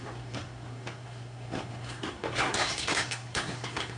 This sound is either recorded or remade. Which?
remade